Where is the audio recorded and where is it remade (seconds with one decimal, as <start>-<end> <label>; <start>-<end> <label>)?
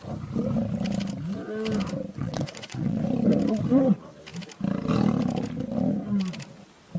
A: 0.0-2.2 recorded; 2.2-3.0 remade; 3.0-7.0 recorded